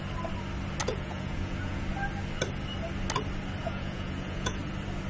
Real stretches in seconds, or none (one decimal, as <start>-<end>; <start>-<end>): 0.0-0.8; 1.8-3.6; 4.6-5.1